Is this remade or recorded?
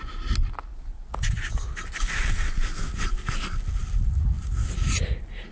recorded